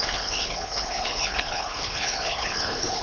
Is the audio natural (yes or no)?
no